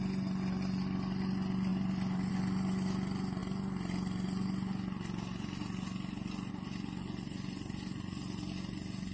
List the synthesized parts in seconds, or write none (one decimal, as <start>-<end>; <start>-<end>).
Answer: 1.7-2.3

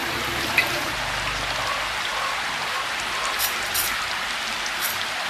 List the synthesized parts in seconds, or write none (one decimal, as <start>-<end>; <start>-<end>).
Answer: 0.0-1.0

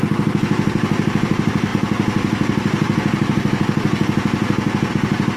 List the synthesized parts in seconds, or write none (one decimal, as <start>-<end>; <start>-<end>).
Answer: none

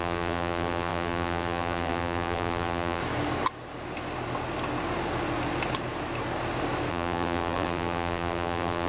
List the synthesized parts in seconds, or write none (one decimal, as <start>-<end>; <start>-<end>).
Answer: 0.0-3.0; 6.9-8.9

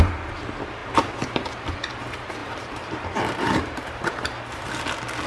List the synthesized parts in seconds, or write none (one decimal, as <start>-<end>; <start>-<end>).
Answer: 2.4-4.7

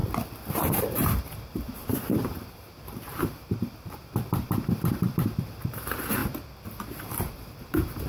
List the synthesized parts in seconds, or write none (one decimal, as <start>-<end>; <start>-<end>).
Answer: 0.5-6.2; 6.8-8.1